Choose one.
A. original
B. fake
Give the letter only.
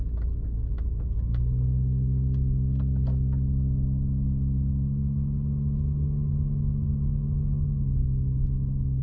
A